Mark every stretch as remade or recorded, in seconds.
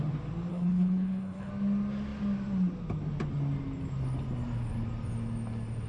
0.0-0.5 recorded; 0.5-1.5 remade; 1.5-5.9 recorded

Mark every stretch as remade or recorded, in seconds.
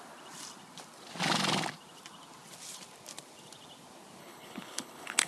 0.0-4.2 recorded; 4.2-5.3 remade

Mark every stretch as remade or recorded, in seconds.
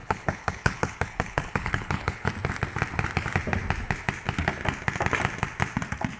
0.0-2.3 remade; 2.3-6.2 recorded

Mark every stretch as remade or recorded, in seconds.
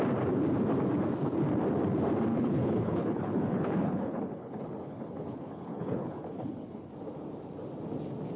0.0-2.3 recorded; 2.3-6.9 remade; 6.9-8.4 recorded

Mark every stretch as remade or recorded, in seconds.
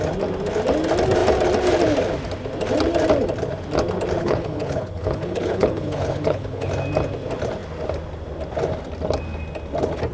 0.0-4.2 recorded; 4.2-6.7 remade; 6.7-10.1 recorded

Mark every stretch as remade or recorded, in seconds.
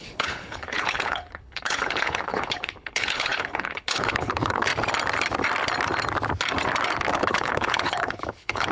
0.0-4.7 remade; 4.7-7.1 recorded; 7.1-8.7 remade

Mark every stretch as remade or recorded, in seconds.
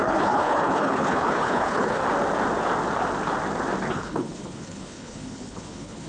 0.0-2.0 remade; 2.0-3.9 recorded; 3.9-6.1 remade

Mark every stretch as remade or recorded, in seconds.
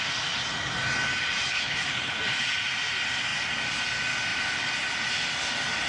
0.0-1.5 recorded; 1.5-2.2 remade; 2.2-5.9 recorded